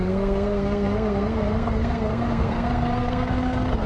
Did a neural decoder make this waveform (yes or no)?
yes